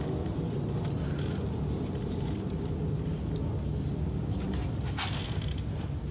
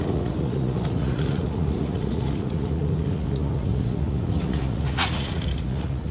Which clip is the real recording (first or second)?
first